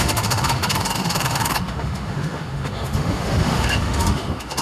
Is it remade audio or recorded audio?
remade